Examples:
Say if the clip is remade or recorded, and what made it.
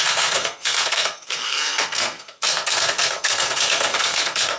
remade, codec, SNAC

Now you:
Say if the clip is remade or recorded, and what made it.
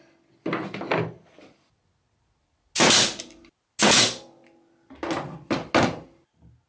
recorded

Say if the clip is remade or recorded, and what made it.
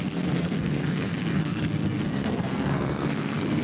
remade, codec, SNAC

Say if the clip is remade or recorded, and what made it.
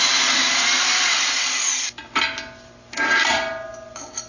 recorded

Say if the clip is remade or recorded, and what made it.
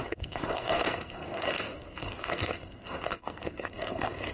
remade, codec, SNAC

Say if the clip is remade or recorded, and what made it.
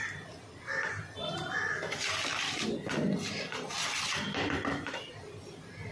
recorded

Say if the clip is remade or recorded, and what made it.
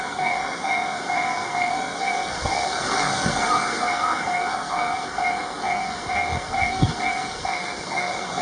remade, codec, SNAC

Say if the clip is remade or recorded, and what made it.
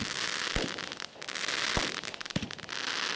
recorded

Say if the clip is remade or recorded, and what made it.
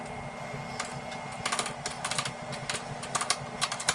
recorded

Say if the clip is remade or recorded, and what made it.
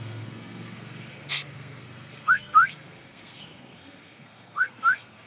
remade, codec, SNAC